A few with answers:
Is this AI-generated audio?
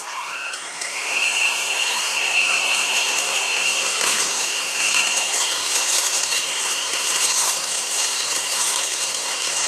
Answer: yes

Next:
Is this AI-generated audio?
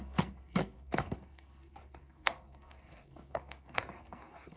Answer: yes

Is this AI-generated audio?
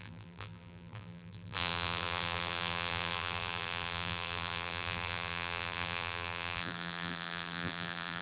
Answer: yes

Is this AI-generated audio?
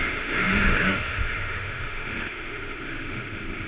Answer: yes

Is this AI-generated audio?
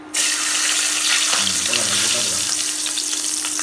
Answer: no